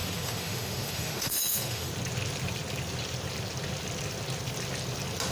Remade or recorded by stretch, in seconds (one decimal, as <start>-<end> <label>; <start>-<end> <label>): 0.0-1.9 remade; 1.9-5.3 recorded